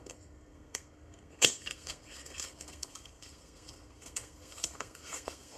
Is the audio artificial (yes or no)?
yes